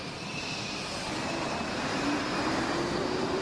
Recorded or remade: recorded